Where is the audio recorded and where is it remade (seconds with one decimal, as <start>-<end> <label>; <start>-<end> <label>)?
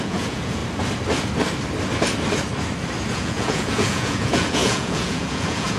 0.0-0.6 remade; 0.6-3.1 recorded; 3.1-5.8 remade